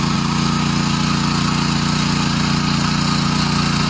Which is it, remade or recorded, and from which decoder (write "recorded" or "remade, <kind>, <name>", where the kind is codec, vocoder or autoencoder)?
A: recorded